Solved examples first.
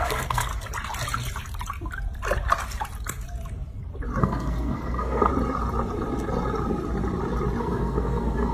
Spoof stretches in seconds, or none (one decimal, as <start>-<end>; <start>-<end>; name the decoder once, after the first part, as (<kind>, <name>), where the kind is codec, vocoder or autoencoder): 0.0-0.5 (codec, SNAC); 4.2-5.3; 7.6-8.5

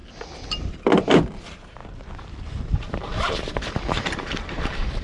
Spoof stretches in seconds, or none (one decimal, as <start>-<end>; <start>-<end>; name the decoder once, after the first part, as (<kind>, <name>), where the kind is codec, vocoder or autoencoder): 1.4-1.8 (vocoder, BigVGAN v2); 2.6-5.0

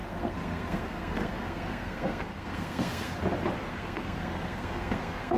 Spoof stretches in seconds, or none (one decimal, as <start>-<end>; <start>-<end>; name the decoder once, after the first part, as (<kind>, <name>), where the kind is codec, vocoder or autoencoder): 0.0-3.2 (codec, SNAC); 3.7-5.4

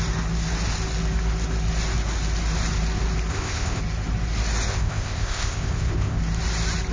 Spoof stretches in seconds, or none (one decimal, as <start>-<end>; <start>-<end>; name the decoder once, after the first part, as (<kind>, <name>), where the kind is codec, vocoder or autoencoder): 3.3-3.8 (codec, ZipCodec); 4.7-6.2